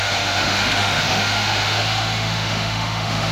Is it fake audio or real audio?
fake